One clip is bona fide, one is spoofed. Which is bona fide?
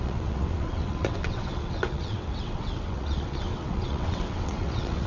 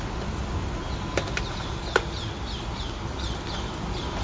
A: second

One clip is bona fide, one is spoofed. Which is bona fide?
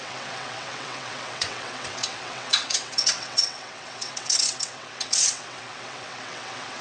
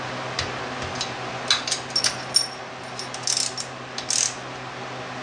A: second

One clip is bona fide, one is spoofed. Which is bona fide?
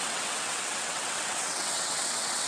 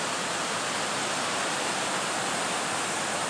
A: second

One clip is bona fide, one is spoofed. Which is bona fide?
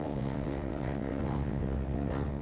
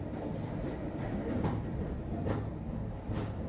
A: second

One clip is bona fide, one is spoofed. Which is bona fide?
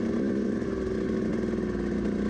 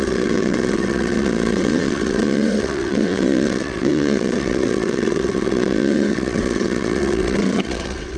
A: first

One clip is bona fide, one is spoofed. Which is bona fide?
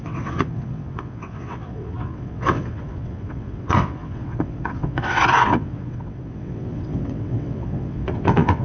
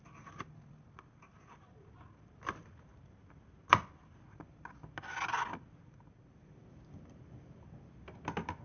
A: second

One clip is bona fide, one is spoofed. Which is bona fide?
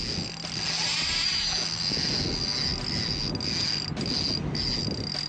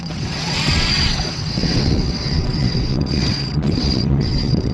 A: first